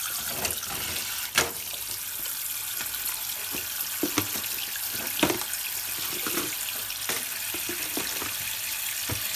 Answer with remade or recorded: recorded